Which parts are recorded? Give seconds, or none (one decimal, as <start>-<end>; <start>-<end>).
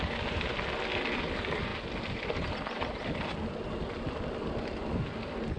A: 0.0-5.6